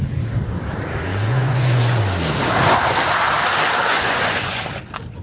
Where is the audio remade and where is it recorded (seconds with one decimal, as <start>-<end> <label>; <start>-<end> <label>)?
0.0-1.1 recorded; 1.1-2.0 remade; 2.0-3.9 recorded; 3.9-4.6 remade; 4.6-5.2 recorded